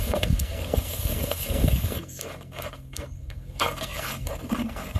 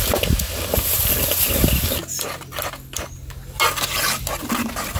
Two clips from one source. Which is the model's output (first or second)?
first